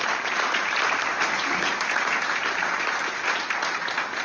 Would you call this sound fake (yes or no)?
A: yes